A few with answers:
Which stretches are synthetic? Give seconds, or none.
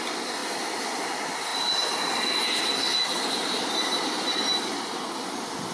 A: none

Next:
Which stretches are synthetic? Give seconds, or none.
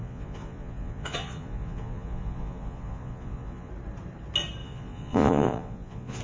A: 0.0-3.7; 4.6-6.2